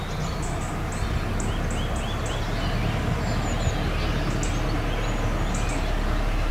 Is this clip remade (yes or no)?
no